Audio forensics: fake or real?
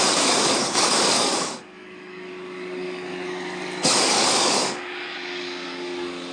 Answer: fake